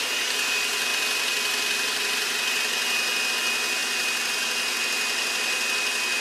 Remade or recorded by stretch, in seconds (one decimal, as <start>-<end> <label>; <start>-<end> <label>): 0.0-6.2 recorded